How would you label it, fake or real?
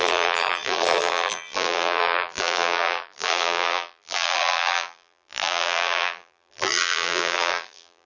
fake